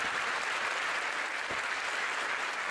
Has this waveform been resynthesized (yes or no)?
no